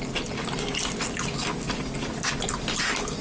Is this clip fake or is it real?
real